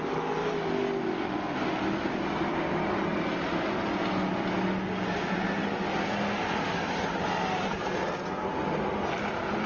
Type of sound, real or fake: real